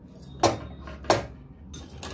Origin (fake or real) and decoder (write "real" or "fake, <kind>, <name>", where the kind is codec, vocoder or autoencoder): real